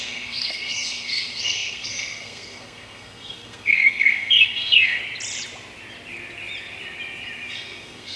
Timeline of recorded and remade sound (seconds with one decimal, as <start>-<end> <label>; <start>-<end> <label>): 0.0-5.0 remade; 5.0-7.5 recorded; 7.5-8.2 remade